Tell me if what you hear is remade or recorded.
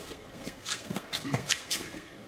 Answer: remade